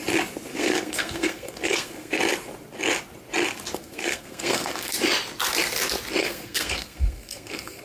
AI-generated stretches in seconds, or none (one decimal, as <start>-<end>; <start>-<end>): 0.5-2.2; 3.8-4.9; 6.2-7.8